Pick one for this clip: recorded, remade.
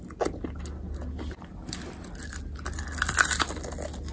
recorded